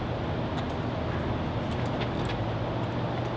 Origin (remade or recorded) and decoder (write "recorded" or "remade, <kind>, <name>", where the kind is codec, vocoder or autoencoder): recorded